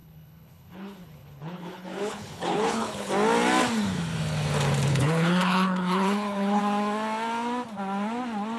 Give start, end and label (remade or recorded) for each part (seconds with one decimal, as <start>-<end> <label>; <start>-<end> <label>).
0.0-3.1 remade; 3.1-4.9 recorded; 4.9-6.6 remade; 6.6-8.6 recorded